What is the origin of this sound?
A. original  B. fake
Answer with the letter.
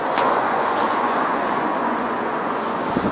B